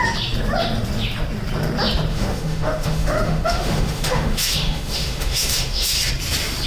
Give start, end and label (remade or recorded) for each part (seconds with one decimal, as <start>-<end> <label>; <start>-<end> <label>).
0.0-2.1 recorded; 2.1-6.1 remade; 6.1-6.7 recorded